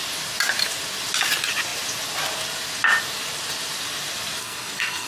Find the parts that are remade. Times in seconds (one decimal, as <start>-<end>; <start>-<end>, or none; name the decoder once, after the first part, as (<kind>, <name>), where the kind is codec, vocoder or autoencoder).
4.4-5.1 (codec, SNAC)